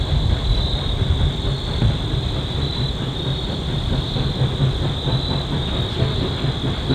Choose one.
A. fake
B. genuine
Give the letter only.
B